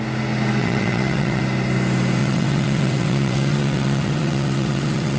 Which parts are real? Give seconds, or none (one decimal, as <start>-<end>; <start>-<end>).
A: 0.0-0.6; 1.4-2.2